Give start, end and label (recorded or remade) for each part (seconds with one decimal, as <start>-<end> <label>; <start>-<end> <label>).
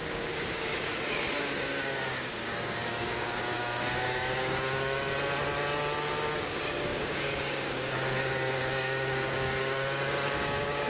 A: 0.0-5.1 remade; 5.1-6.4 recorded; 6.4-10.9 remade